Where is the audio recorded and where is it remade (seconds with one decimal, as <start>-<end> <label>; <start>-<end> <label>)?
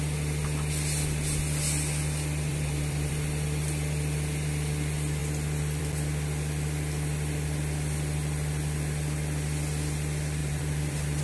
0.0-2.5 recorded; 2.5-3.1 remade; 3.1-10.4 recorded; 10.4-11.2 remade